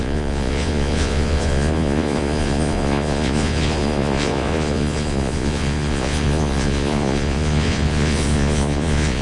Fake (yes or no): yes